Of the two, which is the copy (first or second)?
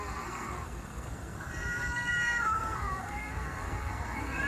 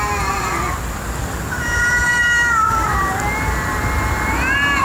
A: first